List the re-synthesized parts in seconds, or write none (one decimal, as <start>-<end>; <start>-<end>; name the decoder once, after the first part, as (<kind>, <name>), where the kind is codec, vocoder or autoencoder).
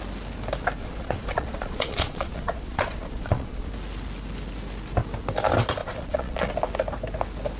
0.8-3.7 (vocoder, Vocos); 5.8-6.5